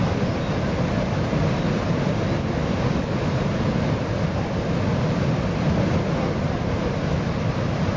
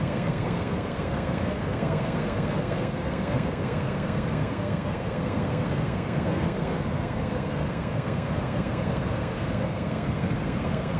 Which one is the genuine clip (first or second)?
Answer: first